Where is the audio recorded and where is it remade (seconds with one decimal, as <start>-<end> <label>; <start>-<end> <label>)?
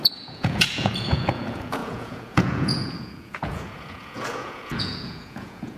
0.0-5.8 remade